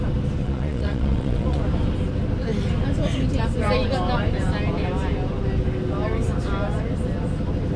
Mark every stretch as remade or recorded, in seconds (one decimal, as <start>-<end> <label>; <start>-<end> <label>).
0.0-0.4 recorded; 0.4-1.6 remade; 1.6-7.8 recorded